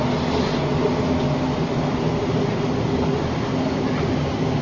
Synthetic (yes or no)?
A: no